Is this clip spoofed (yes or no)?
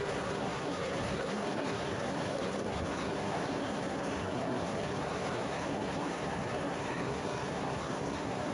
yes